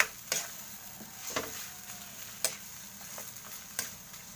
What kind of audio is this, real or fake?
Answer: real